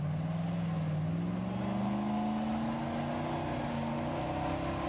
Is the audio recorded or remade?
recorded